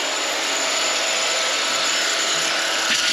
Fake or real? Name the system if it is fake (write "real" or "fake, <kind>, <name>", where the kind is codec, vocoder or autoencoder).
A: real